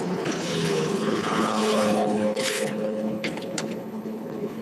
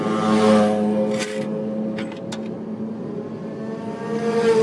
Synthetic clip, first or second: first